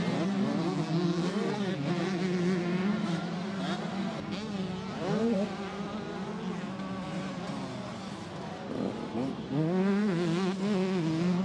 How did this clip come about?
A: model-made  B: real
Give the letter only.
B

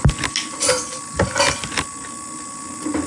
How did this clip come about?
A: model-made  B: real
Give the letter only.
B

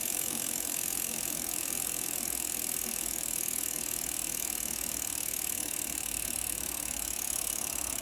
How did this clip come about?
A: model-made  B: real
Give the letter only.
A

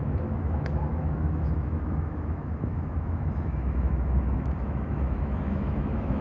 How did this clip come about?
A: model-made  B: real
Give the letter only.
A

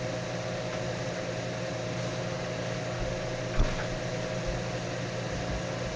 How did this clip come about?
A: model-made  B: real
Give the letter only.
B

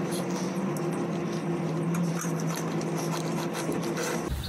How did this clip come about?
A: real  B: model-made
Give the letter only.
A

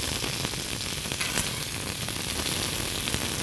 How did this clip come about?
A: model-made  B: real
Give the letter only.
B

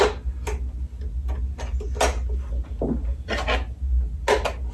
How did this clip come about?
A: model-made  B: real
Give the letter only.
B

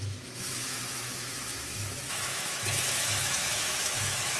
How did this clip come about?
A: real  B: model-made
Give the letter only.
B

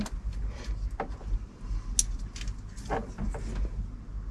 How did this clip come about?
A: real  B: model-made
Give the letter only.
A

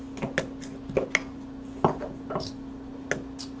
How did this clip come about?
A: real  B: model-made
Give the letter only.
A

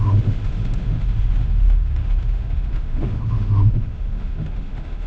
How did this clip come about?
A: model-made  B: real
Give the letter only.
A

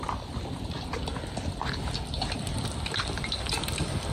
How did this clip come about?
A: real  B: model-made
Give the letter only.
A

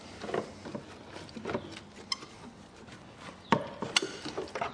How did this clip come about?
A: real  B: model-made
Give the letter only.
A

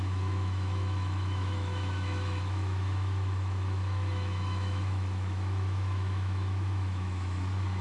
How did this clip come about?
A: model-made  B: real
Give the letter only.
A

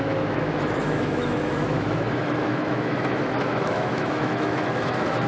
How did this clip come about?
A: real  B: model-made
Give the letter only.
B